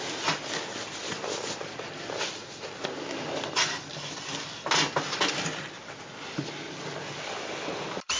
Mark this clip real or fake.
real